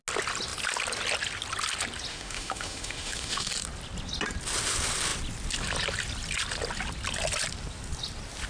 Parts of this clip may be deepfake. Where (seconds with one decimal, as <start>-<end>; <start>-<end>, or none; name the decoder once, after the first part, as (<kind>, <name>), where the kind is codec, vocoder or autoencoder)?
2.1-3.5 (autoencoder, DAC-VAE)